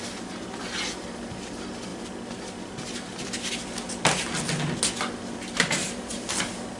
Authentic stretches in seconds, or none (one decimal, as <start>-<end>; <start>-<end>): 0.0-5.8; 6.3-6.8